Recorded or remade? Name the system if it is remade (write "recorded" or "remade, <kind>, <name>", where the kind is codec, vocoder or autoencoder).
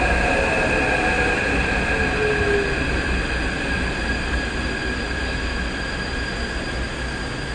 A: recorded